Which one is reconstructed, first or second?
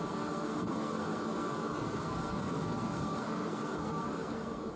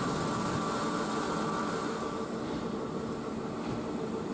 first